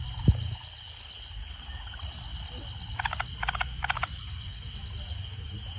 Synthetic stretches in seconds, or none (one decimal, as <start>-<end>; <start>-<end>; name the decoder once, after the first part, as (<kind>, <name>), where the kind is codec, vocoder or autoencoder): 3.7-4.8 (vocoder, BigVGAN v2)